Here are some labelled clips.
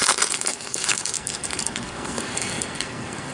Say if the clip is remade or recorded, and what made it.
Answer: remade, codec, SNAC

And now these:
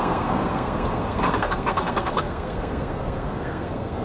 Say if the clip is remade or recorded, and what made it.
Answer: remade, codec, SNAC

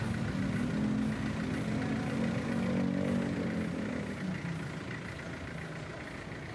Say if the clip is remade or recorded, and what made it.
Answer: recorded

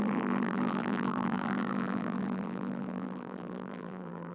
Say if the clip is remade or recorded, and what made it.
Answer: remade, vocoder, BigVGAN v2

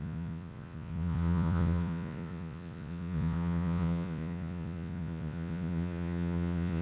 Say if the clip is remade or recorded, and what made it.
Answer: remade, vocoder, Vocos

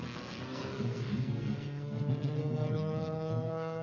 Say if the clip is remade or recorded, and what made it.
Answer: remade, codec, SNAC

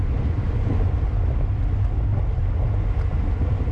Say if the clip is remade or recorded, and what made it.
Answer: recorded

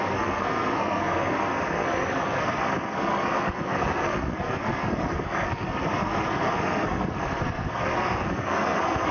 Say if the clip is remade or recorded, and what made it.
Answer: remade, codec, SNAC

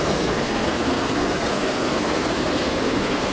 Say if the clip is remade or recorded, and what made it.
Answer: remade, codec, SNAC